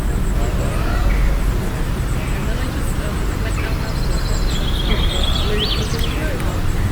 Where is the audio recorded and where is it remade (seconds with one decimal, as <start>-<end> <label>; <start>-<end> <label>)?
0.0-6.9 recorded